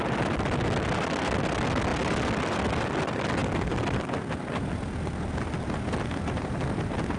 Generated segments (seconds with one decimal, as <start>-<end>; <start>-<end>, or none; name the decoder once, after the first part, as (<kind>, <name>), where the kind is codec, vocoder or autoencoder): none